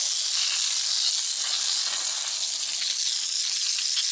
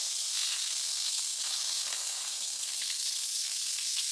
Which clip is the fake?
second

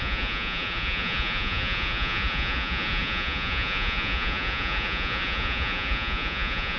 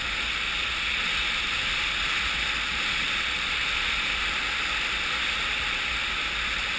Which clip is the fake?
first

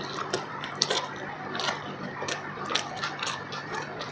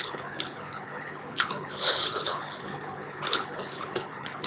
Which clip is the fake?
second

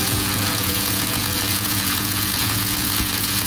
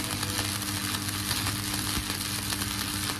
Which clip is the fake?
first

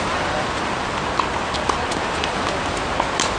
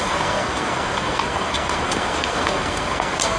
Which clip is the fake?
second